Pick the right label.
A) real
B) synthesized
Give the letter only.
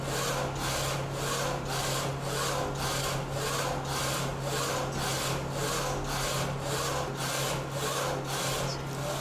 A